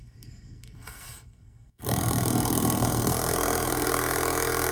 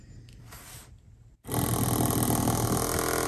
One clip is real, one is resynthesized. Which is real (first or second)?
second